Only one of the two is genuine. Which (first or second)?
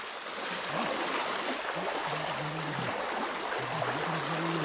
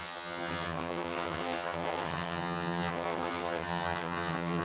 first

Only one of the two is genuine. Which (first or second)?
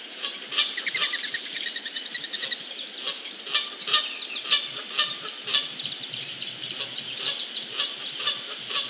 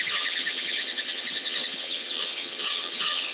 first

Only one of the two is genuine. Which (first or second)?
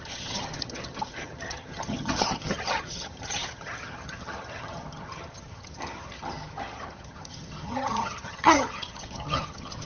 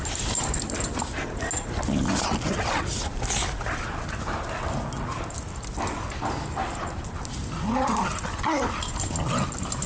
second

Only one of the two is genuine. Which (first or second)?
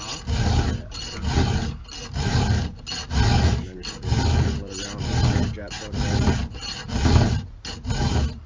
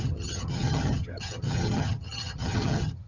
first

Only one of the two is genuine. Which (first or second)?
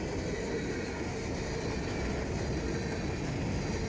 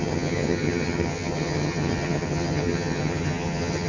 first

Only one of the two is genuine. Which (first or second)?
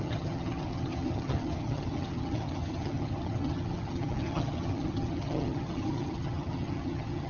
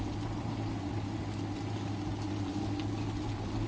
second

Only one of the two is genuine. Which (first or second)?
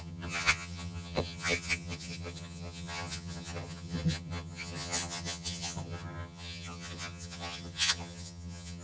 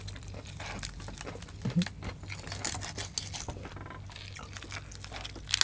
second